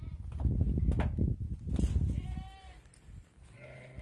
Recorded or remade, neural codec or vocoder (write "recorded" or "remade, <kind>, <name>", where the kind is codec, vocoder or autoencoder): recorded